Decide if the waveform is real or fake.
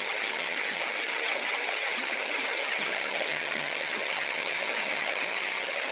fake